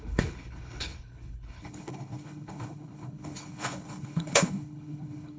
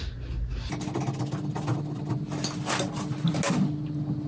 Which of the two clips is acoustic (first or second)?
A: second